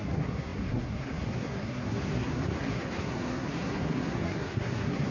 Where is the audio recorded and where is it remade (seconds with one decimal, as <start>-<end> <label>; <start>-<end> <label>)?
0.0-5.1 remade